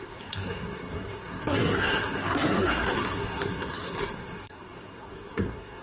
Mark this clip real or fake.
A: fake